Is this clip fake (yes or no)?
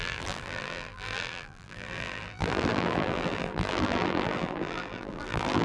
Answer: yes